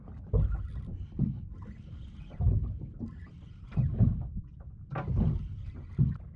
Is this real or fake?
real